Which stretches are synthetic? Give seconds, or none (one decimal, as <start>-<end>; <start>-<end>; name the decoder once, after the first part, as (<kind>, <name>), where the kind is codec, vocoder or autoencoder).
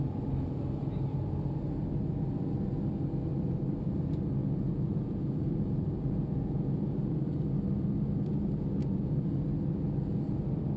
4.4-6.9 (vocoder, Vocos); 8.8-9.3